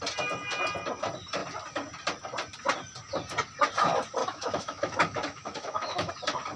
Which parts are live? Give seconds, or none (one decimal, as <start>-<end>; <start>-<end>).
0.0-4.2; 6.1-6.6